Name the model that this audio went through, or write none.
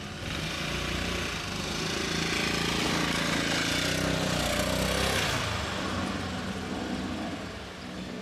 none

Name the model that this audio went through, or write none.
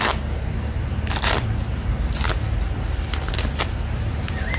vocoder, BigVGAN v2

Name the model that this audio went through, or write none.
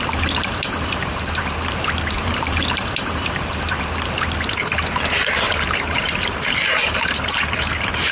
vocoder, BigVGAN v2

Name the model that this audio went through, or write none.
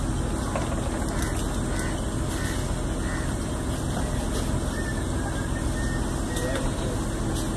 none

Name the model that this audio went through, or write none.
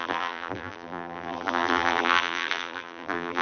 vocoder, BigVGAN v2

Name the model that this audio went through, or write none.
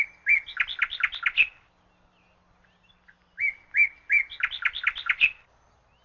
none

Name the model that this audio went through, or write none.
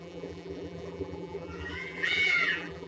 vocoder, BigVGAN v2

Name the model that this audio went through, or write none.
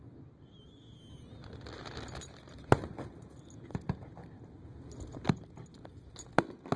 none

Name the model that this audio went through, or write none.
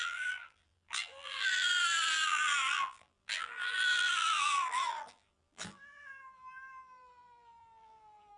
vocoder, BigVGAN v2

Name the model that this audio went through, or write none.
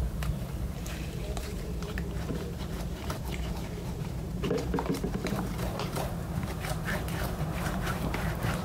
vocoder, BigVGAN v2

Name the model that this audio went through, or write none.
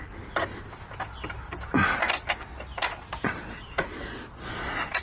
none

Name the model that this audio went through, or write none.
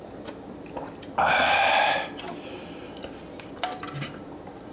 vocoder, BigVGAN v2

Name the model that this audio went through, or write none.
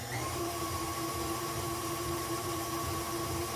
vocoder, BigVGAN v2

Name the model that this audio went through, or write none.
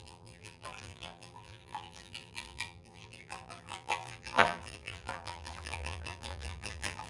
vocoder, BigVGAN v2